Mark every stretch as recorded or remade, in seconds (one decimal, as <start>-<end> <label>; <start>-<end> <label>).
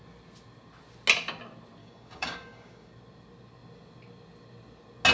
0.0-1.8 recorded; 1.8-2.9 remade; 2.9-5.1 recorded